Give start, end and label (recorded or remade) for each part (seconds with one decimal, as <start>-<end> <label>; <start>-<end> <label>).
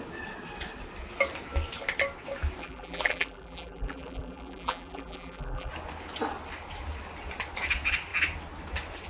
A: 0.0-2.6 recorded; 2.6-5.7 remade; 5.7-9.1 recorded